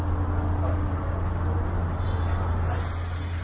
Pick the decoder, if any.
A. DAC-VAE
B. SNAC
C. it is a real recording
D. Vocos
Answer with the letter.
C